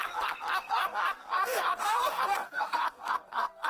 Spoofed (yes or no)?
yes